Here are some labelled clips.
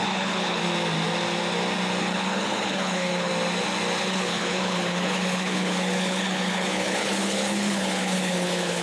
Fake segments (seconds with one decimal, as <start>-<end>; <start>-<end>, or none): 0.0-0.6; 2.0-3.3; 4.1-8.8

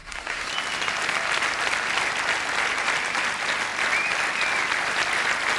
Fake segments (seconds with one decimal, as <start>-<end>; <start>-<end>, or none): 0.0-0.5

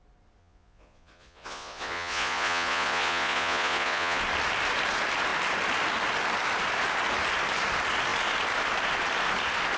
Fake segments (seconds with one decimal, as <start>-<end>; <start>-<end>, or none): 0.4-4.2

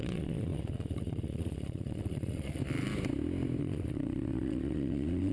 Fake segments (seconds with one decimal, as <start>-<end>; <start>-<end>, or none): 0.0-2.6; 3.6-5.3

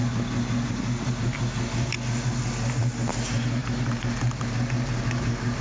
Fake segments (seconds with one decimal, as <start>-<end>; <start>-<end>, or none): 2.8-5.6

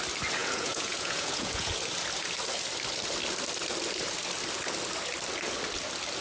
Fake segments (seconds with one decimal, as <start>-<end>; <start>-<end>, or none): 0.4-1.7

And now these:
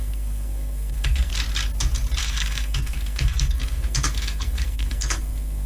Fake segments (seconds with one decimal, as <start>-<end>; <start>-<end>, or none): 0.0-1.3; 2.2-5.7